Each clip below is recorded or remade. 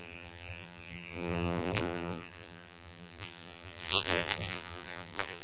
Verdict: remade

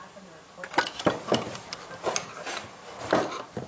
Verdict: recorded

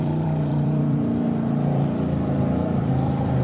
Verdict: remade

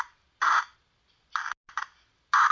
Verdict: recorded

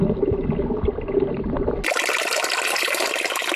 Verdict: recorded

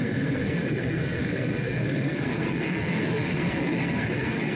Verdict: remade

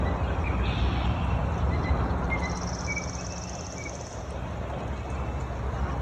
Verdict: recorded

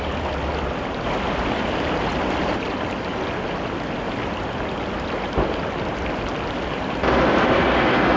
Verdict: recorded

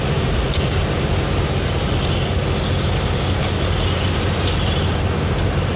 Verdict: recorded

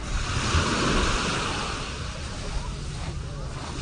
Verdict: recorded